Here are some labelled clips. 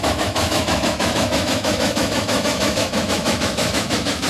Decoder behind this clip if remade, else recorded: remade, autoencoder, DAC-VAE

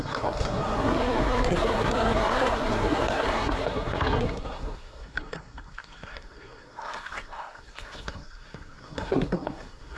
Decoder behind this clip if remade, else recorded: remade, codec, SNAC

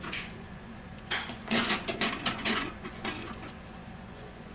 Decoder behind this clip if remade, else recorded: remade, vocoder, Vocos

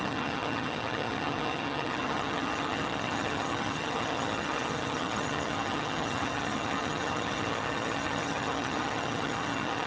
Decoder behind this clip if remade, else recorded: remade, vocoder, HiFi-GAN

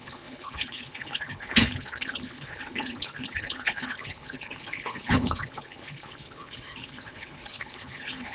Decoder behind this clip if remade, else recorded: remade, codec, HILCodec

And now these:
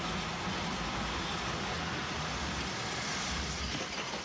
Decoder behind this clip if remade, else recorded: recorded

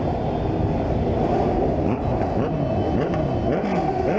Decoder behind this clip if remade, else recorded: recorded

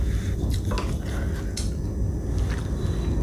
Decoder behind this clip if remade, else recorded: recorded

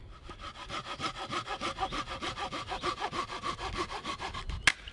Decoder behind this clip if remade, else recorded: recorded